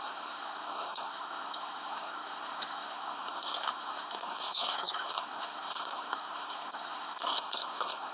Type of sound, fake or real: fake